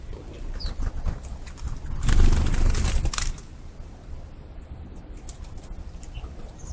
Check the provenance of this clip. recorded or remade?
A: recorded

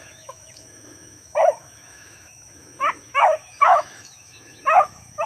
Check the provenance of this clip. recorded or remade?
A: remade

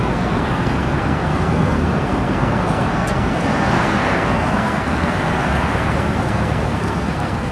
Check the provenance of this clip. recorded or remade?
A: remade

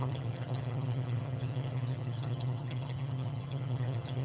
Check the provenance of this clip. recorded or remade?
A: remade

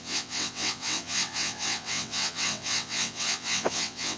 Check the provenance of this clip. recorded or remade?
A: remade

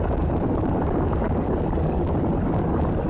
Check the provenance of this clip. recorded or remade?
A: recorded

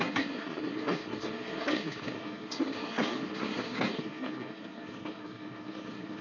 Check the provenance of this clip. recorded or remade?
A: remade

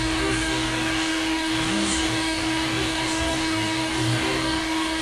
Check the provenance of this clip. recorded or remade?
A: remade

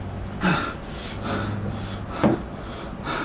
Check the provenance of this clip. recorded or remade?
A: recorded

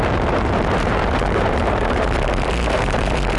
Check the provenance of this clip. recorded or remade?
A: remade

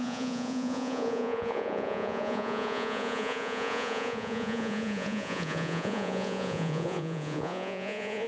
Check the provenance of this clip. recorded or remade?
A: remade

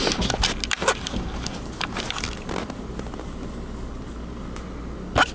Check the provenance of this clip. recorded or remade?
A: recorded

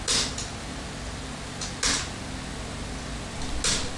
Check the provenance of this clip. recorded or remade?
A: recorded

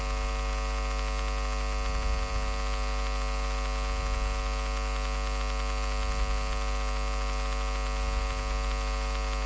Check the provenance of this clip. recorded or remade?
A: recorded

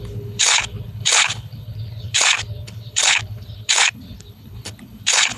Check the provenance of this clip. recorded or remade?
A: remade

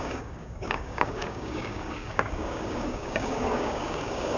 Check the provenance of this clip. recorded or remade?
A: remade